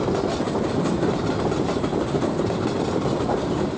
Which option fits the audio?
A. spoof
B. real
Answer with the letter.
B